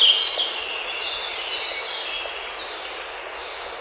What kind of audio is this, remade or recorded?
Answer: recorded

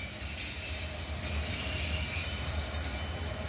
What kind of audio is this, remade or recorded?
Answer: recorded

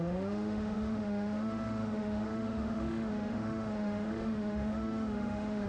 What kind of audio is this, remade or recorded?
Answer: remade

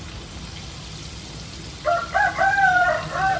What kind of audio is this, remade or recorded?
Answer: recorded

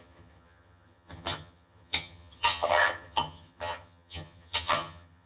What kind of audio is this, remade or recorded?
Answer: remade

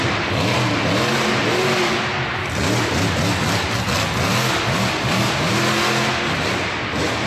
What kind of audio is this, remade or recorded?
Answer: recorded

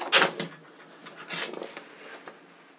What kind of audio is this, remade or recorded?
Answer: recorded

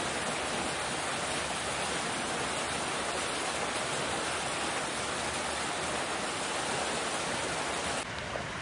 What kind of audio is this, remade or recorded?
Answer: recorded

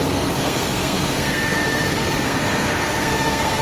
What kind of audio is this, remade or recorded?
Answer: remade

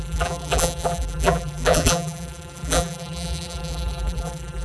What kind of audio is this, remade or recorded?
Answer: remade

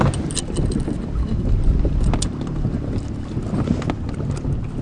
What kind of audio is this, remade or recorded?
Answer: recorded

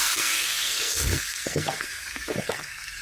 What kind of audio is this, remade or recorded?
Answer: remade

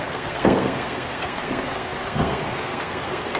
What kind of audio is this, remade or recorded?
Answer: remade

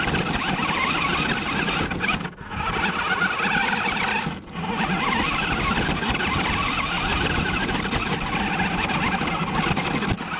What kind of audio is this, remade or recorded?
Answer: recorded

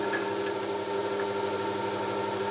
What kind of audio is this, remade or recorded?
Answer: recorded